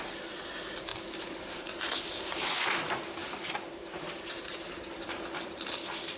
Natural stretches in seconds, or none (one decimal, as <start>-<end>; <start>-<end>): 0.0-3.2; 4.9-6.2